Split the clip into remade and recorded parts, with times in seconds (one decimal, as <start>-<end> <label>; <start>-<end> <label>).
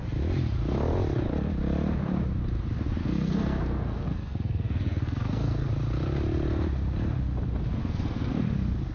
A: 0.0-3.0 recorded; 3.0-5.7 remade; 5.7-7.8 recorded; 7.8-8.4 remade; 8.4-8.9 recorded